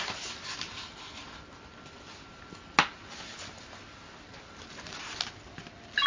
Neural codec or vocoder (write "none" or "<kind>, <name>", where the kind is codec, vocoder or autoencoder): none